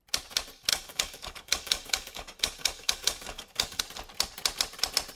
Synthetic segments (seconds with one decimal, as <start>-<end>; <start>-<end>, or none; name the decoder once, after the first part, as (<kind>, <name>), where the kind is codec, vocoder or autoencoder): 0.7-3.8 (codec, DAC)

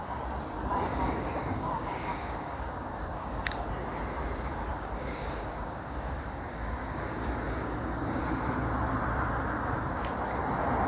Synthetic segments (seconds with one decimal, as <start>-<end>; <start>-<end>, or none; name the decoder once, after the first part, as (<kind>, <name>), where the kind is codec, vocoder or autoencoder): 0.9-3.7 (codec, DAC); 4.7-8.2

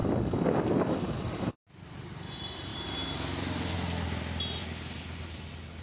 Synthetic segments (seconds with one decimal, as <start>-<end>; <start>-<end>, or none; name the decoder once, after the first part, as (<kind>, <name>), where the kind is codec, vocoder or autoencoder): 0.0-1.5 (codec, DAC)

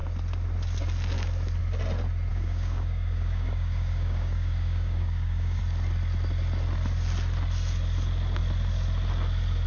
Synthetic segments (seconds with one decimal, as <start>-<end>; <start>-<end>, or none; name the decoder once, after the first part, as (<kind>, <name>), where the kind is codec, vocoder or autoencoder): 2.3-5.6 (codec, DAC)

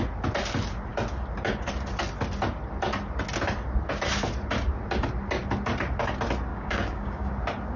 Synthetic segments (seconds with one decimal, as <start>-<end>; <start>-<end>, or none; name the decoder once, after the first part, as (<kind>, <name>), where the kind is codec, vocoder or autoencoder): 6.5-7.3 (codec, DAC)

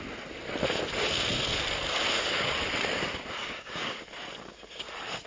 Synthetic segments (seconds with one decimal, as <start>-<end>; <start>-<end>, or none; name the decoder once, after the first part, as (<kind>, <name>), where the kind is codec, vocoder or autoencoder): 3.4-4.0 (codec, DAC)

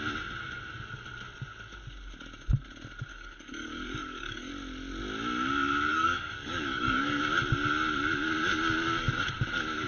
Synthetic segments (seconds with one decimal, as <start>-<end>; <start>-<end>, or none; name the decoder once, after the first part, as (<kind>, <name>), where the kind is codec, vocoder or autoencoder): 3.1-4.5 (codec, DAC); 5.9-7.2